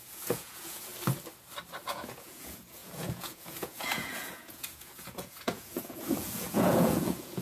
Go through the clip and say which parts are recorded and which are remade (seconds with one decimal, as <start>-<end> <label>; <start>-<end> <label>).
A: 0.0-0.9 remade; 0.9-1.9 recorded; 1.9-7.4 remade

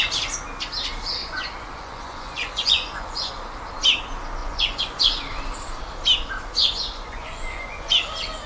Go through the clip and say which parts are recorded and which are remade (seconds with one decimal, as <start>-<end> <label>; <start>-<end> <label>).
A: 0.0-1.2 recorded; 1.2-3.3 remade; 3.3-4.4 recorded; 4.4-5.0 remade; 5.0-6.6 recorded; 6.6-8.0 remade; 8.0-8.5 recorded

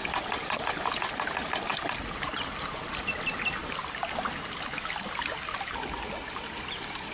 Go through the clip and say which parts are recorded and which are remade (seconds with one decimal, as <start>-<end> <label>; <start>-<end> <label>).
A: 0.0-7.1 recorded

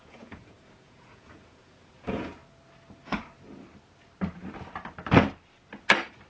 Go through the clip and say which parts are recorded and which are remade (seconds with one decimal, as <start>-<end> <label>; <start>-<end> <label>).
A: 0.0-2.4 remade; 2.4-6.3 recorded

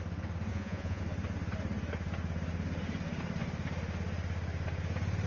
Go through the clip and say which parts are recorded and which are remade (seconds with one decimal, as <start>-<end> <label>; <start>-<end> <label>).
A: 0.0-0.5 recorded; 0.5-1.0 remade; 1.0-5.3 recorded

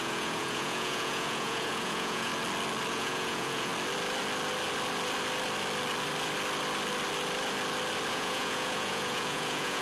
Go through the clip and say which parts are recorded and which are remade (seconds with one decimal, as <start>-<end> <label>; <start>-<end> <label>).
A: 0.0-2.3 remade; 2.3-2.9 recorded; 2.9-3.7 remade; 3.7-8.1 recorded; 8.1-9.8 remade

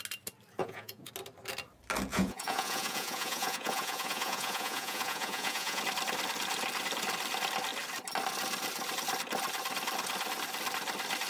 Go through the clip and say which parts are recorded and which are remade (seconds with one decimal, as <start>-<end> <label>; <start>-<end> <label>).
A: 0.0-0.6 recorded; 0.6-1.1 remade; 1.1-2.1 recorded; 2.1-5.8 remade; 5.8-11.3 recorded